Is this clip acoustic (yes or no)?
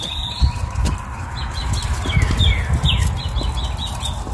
yes